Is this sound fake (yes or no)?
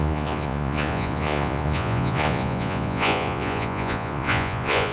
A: yes